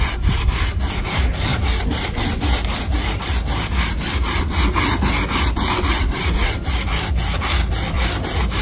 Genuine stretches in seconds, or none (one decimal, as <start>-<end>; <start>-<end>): 0.0-8.6